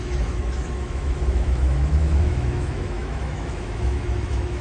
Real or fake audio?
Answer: fake